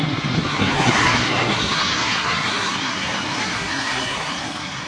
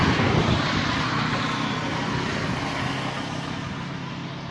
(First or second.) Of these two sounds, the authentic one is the second